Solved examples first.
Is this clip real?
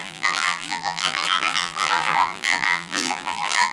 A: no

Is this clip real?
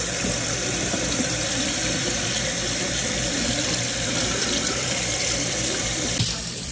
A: no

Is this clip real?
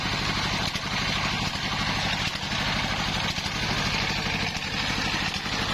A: yes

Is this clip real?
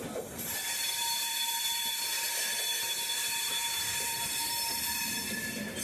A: no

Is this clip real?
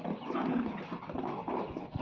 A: yes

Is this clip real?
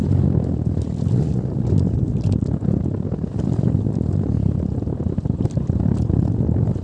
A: yes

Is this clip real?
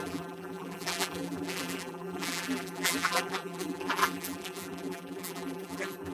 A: no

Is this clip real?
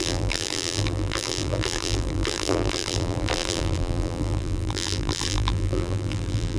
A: no